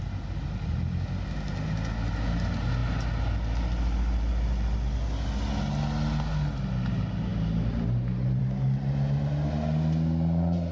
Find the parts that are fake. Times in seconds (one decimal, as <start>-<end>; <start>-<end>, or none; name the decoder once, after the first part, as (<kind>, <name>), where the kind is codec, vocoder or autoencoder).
none